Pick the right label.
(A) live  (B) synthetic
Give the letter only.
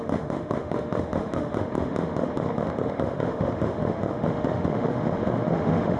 B